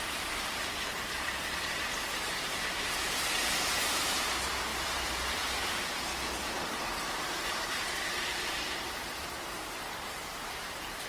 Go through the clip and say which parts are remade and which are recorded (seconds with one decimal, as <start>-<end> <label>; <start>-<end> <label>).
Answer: 0.0-6.1 remade; 6.1-7.0 recorded; 7.0-11.1 remade